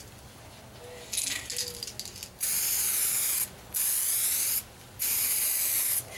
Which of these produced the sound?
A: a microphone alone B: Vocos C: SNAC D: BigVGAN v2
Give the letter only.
A